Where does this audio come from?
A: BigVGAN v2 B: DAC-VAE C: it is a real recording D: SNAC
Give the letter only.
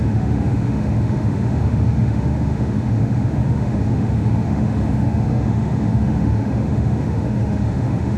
B